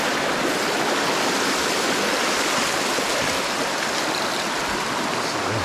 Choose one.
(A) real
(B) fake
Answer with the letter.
A